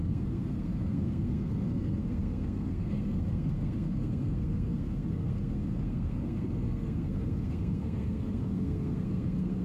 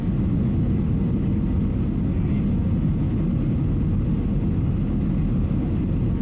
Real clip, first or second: second